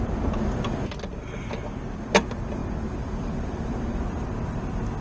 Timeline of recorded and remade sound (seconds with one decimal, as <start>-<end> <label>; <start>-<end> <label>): 0.0-2.6 recorded; 2.6-4.2 remade; 4.2-5.0 recorded